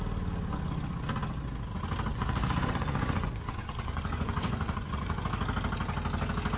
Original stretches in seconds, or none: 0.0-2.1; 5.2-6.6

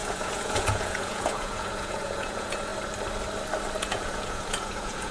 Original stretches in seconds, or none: 2.7-3.8